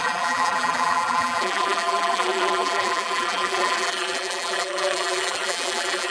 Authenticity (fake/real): fake